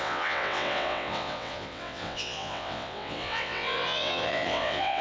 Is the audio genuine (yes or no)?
no